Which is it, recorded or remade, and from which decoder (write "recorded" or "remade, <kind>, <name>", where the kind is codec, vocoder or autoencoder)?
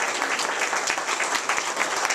recorded